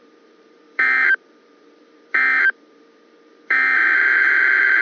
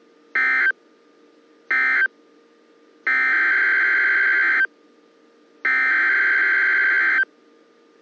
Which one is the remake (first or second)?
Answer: first